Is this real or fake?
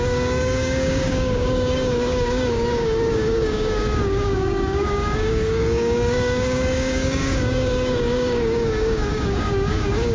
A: fake